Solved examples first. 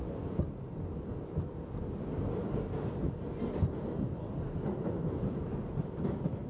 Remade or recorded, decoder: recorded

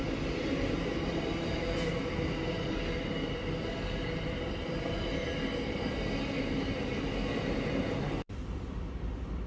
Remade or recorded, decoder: recorded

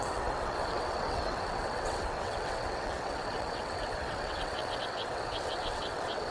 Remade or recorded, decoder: remade, vocoder, WaveNeXt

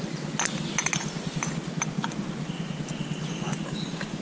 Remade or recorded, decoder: recorded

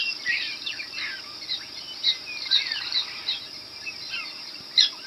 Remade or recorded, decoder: remade, vocoder, BigVGAN v2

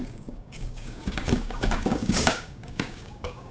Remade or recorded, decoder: remade, codec, DAC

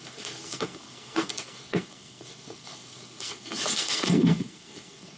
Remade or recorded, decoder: remade, codec, SNAC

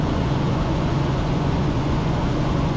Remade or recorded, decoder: remade, vocoder, Vocos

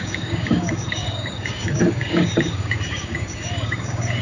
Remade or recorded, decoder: remade, codec, DAC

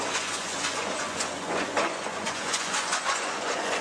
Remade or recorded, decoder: remade, vocoder, Vocos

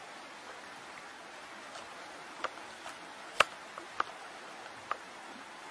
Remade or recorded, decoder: recorded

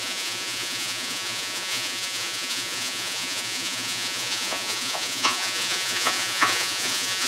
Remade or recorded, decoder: remade, vocoder, Vocos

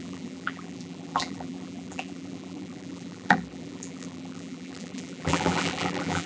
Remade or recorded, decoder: remade, vocoder, BigVGAN v2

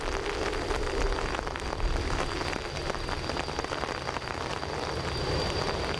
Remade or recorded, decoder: recorded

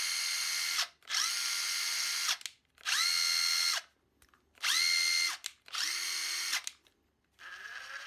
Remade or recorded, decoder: recorded